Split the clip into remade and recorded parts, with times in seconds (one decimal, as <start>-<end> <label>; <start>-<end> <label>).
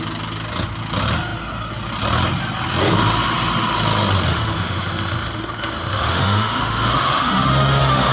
0.0-4.3 recorded; 4.3-8.1 remade